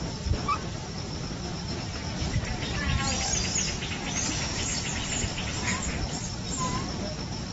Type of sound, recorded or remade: recorded